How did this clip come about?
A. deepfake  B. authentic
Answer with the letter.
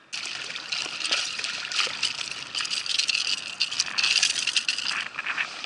B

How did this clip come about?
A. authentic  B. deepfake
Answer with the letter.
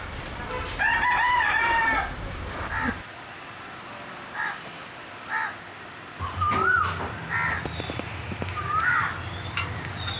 B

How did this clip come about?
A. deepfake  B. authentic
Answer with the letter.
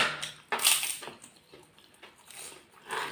B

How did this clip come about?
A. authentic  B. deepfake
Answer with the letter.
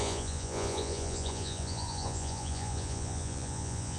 B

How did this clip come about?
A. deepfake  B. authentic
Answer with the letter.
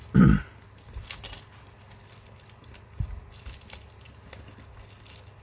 B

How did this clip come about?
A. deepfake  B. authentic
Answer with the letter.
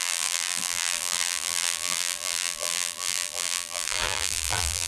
A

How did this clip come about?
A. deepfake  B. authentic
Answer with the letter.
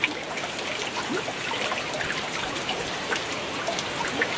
B